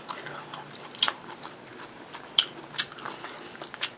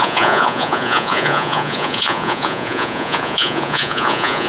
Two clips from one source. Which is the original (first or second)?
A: first